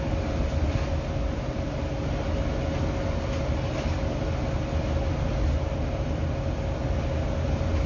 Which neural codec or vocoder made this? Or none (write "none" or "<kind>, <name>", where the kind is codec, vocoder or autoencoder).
none